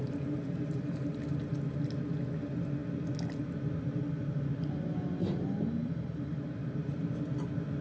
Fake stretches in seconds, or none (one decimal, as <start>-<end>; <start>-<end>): 0.0-1.0; 5.2-7.1

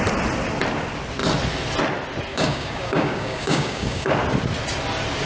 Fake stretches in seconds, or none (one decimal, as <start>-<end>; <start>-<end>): 2.3-4.1

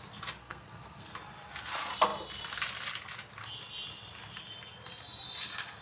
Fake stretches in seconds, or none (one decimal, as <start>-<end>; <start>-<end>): 0.4-1.1

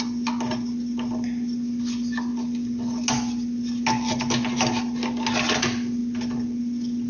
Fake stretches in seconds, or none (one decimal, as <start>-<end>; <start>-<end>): none

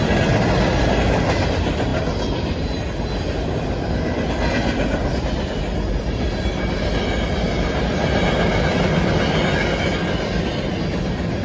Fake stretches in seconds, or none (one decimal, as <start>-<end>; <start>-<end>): none

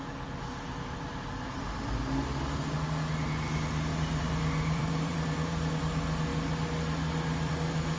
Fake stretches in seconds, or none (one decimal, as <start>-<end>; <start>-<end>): 3.9-5.7

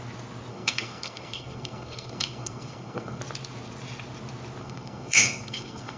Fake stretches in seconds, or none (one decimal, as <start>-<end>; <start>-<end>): 0.5-3.2; 4.6-6.0

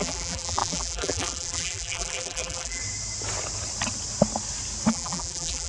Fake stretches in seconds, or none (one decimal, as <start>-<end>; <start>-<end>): 0.0-2.8; 4.9-5.7